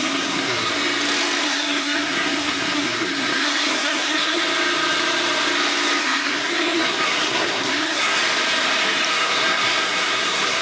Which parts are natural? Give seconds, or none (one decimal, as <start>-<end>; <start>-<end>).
0.7-1.4; 4.4-6.0; 8.2-9.1